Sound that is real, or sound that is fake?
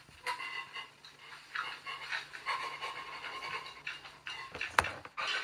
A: real